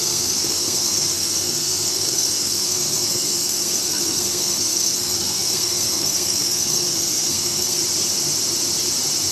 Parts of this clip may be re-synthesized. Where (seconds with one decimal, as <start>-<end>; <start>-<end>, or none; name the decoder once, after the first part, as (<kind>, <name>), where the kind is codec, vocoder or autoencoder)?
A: 0.0-7.8 (codec, SNAC)